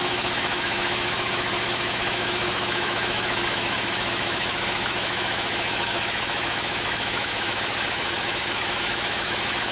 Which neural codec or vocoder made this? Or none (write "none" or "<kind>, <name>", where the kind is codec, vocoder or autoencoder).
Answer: autoencoder, DAC-VAE